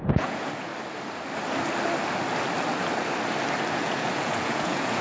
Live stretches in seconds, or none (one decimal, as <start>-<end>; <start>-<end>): 0.7-3.7